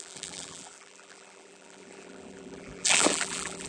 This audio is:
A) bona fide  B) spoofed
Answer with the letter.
B